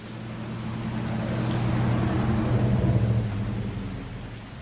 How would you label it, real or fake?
real